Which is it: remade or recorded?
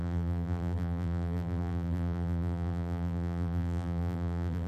remade